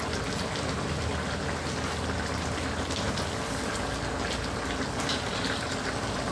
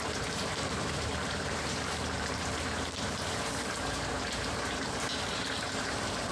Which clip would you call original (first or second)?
first